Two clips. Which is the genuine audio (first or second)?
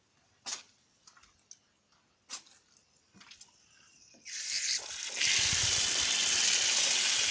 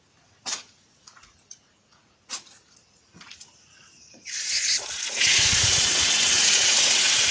first